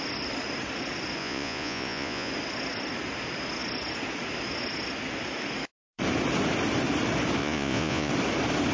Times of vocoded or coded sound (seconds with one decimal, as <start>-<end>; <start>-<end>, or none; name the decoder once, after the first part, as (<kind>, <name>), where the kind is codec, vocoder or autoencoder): 1.2-2.3 (vocoder, Vocos); 7.4-8.1